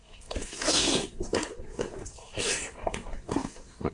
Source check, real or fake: fake